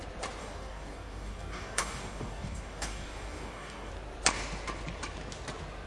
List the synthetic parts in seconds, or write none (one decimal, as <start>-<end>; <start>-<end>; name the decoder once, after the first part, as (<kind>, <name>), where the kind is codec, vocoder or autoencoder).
0.4-3.9 (codec, DAC)